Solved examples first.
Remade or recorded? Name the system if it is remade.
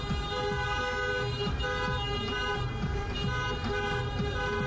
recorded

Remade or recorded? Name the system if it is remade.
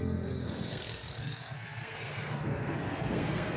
remade, codec, SNAC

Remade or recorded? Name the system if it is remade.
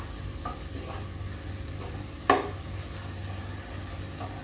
recorded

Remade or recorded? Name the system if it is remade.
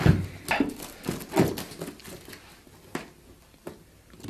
recorded